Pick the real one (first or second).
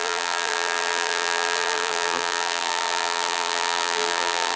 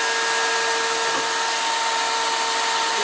second